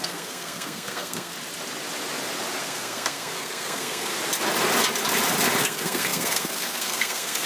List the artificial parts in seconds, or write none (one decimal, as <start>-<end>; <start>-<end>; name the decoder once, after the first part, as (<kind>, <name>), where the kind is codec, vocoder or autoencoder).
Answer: 0.0-1.3 (codec, SNAC); 2.6-4.1; 5.6-7.5